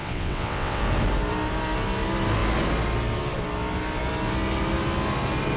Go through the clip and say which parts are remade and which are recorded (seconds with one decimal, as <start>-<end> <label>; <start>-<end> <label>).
0.0-0.8 remade; 0.8-5.6 recorded